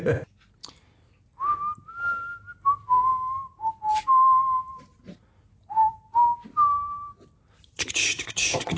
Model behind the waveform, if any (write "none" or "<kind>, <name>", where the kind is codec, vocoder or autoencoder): none